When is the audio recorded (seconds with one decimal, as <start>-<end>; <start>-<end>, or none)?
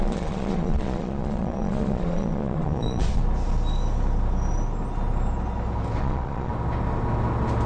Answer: 3.2-6.0; 6.5-7.7